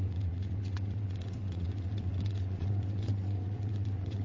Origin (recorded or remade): remade